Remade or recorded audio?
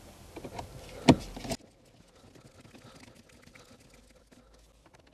recorded